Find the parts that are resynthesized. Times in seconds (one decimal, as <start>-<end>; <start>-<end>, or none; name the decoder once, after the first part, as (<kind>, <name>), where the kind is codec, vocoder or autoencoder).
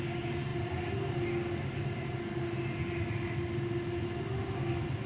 none